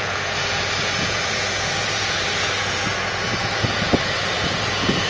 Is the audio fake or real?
fake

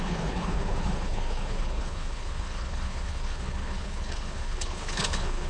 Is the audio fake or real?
fake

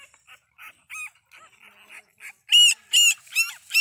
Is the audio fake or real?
real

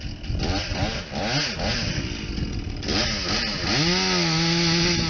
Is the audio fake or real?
real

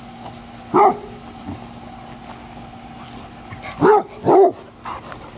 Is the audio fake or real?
real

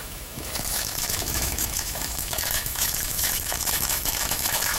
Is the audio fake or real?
fake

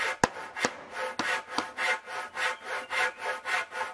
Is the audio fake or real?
real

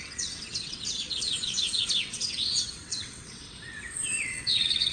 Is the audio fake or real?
fake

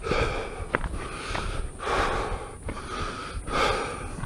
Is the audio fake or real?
real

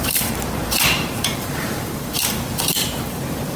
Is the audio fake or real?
fake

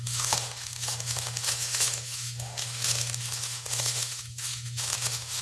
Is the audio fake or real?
fake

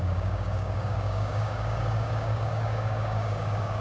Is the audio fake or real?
fake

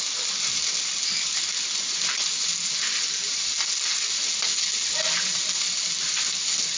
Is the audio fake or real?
real